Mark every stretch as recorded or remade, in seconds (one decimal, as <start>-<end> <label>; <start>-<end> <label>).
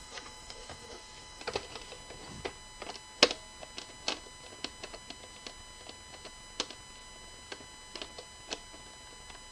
0.0-1.4 remade; 1.4-9.5 recorded